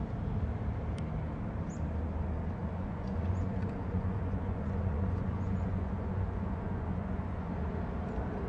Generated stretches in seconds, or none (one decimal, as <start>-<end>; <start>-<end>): 2.6-7.5